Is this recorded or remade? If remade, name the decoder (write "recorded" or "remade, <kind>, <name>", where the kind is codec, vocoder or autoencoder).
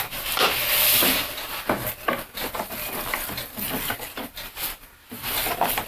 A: recorded